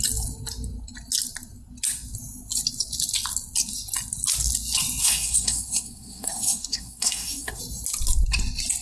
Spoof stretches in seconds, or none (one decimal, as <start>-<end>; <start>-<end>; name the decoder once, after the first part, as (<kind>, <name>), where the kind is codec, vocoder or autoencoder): 5.0-7.6 (codec, SNAC)